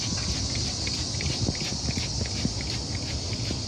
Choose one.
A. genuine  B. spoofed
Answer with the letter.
A